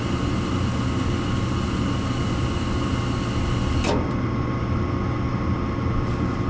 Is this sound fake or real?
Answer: real